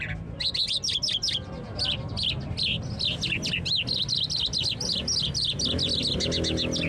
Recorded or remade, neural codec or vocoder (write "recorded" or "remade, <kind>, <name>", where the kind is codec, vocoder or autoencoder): recorded